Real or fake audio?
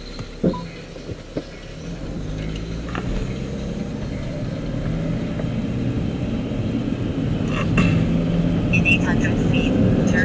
real